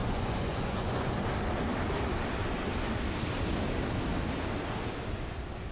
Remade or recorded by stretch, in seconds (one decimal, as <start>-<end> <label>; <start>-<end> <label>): 0.0-1.1 remade; 1.1-5.7 recorded